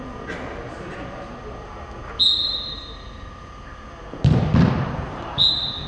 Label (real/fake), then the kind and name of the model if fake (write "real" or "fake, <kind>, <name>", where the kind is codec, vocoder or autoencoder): real